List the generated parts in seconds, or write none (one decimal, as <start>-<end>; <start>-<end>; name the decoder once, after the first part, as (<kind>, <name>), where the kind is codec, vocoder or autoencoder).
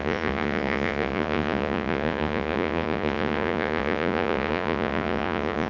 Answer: 0.0-5.7 (vocoder, Vocos)